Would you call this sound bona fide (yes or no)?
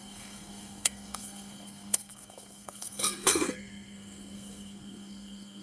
no